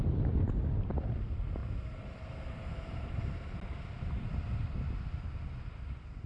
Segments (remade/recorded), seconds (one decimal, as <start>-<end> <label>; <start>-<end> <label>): 0.0-6.3 recorded